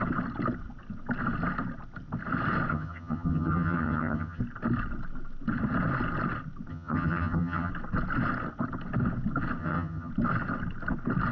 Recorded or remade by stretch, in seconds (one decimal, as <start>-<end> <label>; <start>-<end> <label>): 0.0-2.7 recorded; 2.7-4.4 remade; 4.4-6.7 recorded; 6.7-7.7 remade; 7.7-9.6 recorded; 9.6-10.1 remade; 10.1-11.3 recorded